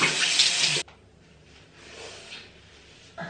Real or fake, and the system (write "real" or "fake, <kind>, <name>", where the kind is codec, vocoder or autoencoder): real